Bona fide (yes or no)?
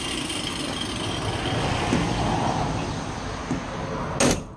yes